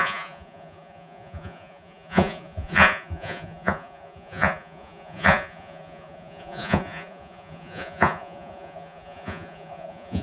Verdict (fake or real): fake